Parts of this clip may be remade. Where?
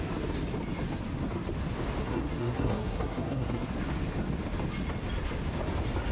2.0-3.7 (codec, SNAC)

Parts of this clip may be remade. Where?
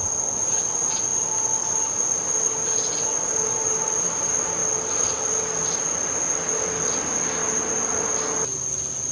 none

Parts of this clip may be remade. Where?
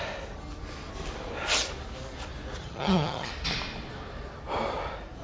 2.6-3.3 (vocoder, HiFi-GAN)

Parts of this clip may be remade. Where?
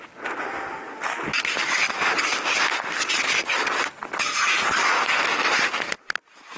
none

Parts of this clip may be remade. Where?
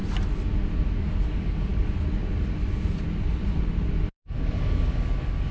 1.0-1.7 (codec, DAC); 4.1-5.5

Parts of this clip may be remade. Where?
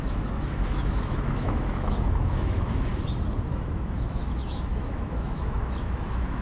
0.0-2.9 (autoencoder, DAC-VAE); 3.5-6.4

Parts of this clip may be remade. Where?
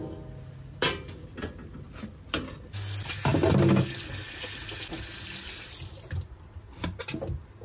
none